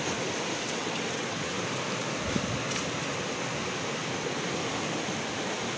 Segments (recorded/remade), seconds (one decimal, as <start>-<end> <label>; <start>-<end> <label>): 0.0-0.6 recorded; 0.6-1.4 remade; 1.4-5.8 recorded